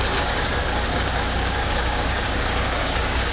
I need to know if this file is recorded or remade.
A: remade